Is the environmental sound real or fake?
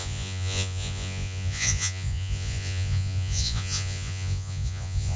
fake